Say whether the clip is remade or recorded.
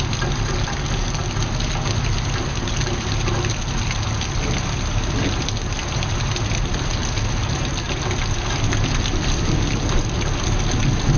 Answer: recorded